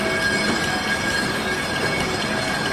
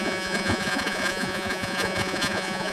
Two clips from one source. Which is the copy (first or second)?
second